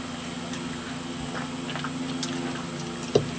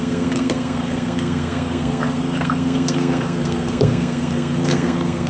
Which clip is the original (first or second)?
first